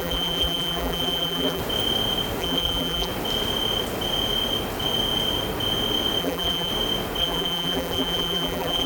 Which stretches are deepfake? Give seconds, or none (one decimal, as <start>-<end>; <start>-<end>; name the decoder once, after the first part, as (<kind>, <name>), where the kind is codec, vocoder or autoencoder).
0.0-1.6 (vocoder, BigVGAN v2); 2.4-3.1; 6.2-6.7; 7.2-8.9